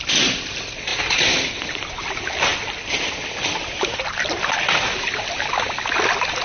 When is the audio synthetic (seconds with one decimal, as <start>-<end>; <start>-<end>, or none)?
none

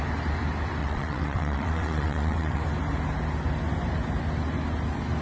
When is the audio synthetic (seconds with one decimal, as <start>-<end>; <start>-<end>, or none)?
0.8-2.6

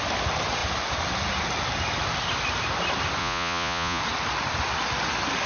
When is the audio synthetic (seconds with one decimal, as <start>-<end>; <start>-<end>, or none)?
3.2-4.0

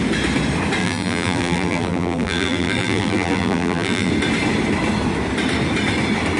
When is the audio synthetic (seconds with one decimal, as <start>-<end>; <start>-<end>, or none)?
0.8-4.1

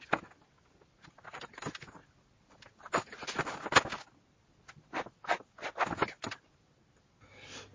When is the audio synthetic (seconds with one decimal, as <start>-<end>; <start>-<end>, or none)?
none